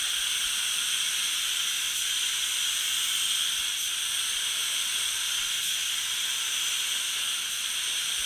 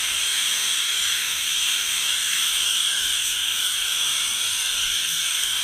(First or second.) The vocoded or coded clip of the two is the second